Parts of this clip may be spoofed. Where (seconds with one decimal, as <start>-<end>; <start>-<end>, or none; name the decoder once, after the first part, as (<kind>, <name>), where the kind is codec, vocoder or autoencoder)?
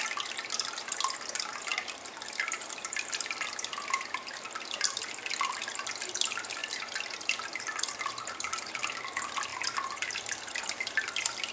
1.7-5.1 (vocoder, BigVGAN v2); 6.6-8.8; 9.5-10.9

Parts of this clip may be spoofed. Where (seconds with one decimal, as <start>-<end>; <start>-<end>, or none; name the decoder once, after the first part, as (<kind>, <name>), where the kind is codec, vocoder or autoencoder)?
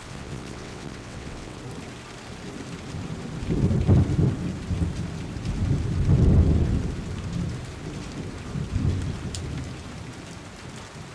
0.0-1.6 (vocoder, WaveNeXt)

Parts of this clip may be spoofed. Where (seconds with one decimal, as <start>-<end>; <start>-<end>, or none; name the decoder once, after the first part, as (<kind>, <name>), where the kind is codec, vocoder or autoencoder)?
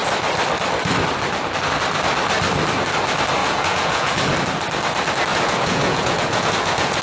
3.4-4.1 (vocoder, Vocos); 5.3-7.0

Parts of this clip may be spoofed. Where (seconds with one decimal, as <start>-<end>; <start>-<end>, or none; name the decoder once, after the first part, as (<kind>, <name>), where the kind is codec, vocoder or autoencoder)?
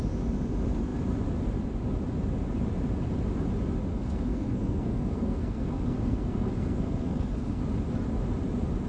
3.9-7.6 (codec, SNAC)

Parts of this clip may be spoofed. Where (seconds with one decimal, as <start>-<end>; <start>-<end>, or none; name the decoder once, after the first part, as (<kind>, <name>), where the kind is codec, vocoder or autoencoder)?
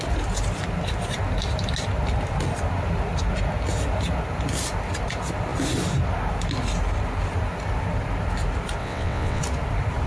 8.8-9.4 (vocoder, WaveNeXt)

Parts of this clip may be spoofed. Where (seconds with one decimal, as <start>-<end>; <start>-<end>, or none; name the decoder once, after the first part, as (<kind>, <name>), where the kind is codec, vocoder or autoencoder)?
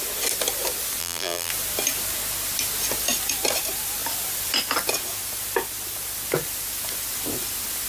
1.0-1.5 (vocoder, BigVGAN v2)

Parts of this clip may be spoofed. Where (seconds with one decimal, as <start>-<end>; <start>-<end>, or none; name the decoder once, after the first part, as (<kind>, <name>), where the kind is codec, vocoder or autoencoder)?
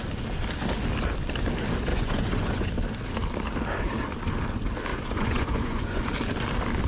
1.9-2.7 (vocoder, Vocos); 4.9-6.0